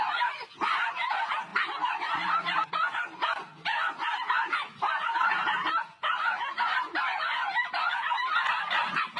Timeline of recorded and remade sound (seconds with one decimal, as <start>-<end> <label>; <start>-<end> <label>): 0.0-9.2 recorded